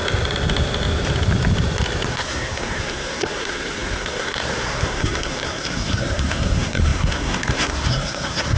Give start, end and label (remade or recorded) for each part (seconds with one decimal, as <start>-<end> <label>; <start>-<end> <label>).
0.0-2.1 recorded; 2.1-8.6 remade